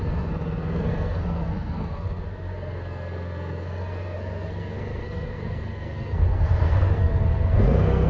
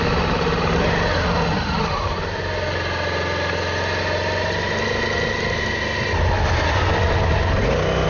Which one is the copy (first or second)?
first